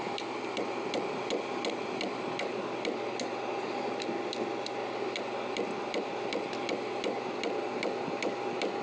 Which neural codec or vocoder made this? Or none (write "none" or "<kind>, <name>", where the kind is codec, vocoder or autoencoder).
none